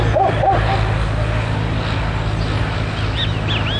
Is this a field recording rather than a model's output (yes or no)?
yes